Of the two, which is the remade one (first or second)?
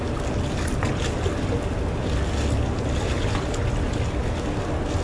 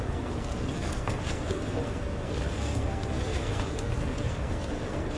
second